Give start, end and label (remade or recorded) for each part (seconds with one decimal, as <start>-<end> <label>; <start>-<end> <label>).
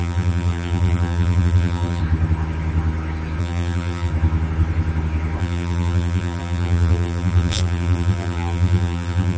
0.0-2.0 remade; 2.0-3.4 recorded; 3.4-4.1 remade; 4.1-5.4 recorded; 5.4-9.4 remade